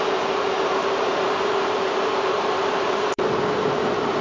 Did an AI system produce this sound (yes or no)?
yes